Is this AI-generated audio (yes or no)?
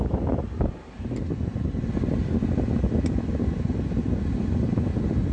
no